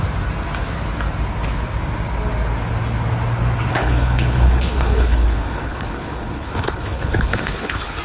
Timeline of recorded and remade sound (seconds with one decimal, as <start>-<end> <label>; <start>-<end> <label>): 0.0-3.7 recorded; 3.7-8.0 remade